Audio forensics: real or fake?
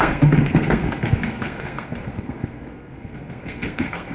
fake